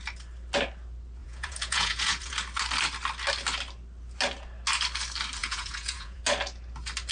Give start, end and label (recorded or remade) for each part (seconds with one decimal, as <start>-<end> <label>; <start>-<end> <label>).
0.0-1.2 recorded; 1.2-2.3 remade; 2.3-5.4 recorded; 5.4-6.2 remade; 6.2-7.1 recorded